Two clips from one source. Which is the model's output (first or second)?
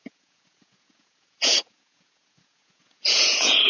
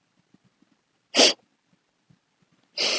first